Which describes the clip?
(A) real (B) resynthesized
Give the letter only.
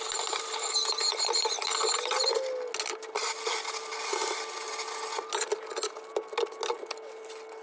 A